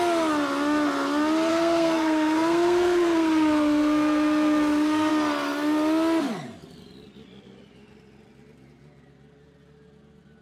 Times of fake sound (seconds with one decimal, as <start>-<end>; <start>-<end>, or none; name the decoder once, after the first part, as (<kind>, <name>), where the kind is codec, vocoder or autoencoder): 1.5-5.1 (codec, SNAC)